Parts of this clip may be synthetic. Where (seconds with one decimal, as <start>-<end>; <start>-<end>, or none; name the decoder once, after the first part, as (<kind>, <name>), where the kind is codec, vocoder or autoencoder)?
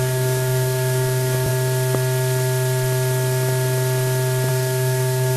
0.0-1.5 (codec, DAC); 4.5-5.4